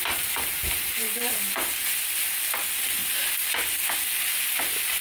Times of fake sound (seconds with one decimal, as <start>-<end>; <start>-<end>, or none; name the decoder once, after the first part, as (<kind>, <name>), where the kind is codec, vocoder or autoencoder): 0.0-1.7 (vocoder, BigVGAN v2)